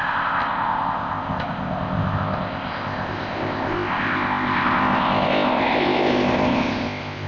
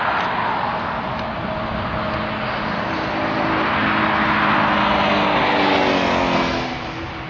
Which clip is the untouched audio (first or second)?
second